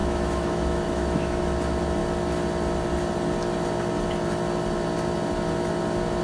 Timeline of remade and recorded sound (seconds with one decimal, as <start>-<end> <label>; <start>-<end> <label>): 0.0-1.4 remade; 1.4-6.2 recorded